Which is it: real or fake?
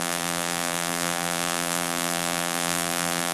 fake